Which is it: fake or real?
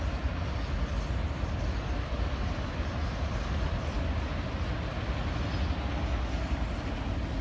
real